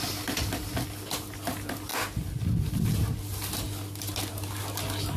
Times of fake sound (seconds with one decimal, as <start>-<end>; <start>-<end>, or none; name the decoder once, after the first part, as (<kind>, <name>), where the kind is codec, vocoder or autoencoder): none